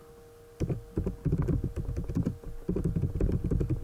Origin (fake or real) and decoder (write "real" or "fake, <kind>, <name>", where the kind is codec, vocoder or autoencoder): real